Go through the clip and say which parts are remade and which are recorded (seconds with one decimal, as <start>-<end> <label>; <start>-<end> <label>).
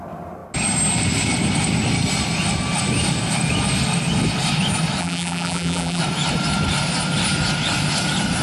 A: 0.0-5.0 recorded; 5.0-6.0 remade; 6.0-8.4 recorded